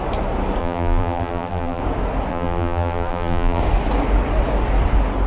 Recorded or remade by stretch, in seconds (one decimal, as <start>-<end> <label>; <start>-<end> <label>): 0.0-0.6 recorded; 0.6-1.8 remade; 1.8-2.3 recorded; 2.3-3.6 remade; 3.6-5.3 recorded